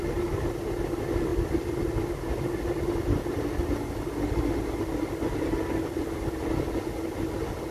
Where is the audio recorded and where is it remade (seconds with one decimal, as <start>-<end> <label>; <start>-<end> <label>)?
0.0-7.7 recorded